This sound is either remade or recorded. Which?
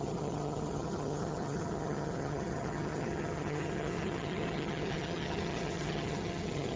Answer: remade